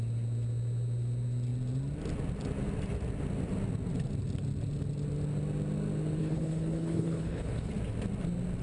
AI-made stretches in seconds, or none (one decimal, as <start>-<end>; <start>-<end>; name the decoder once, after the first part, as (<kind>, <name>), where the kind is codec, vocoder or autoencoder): 6.2-7.7 (codec, HILCodec)